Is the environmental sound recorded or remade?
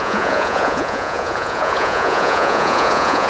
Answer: remade